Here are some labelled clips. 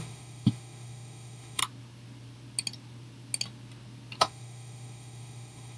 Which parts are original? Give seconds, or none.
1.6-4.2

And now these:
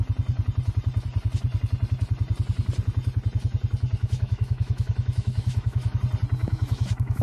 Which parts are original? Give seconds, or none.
0.0-4.0; 6.0-6.4

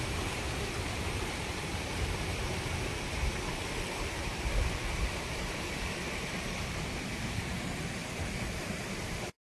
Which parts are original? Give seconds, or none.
2.3-4.0; 8.0-8.9

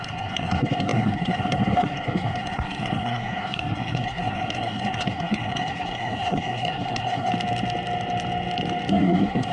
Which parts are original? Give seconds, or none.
7.3-8.9

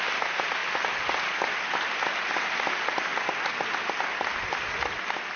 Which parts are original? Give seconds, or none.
0.0-5.4

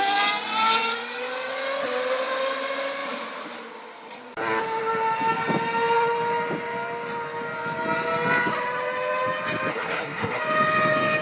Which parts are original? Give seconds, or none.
0.0-9.7; 10.4-11.2

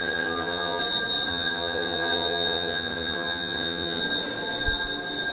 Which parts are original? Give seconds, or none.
0.8-1.3; 4.0-5.3

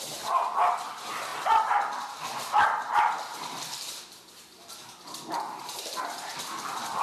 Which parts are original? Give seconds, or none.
0.0-1.3; 3.6-7.0